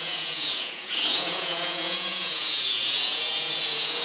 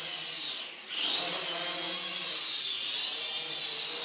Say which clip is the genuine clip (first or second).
second